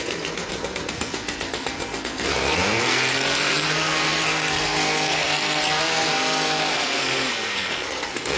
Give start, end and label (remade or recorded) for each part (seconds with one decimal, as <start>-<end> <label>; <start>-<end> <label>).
0.0-8.4 remade